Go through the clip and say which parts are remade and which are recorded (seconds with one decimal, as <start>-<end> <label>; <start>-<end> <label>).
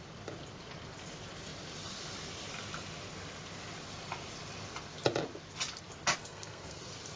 0.0-6.2 recorded; 6.2-6.8 remade; 6.8-7.2 recorded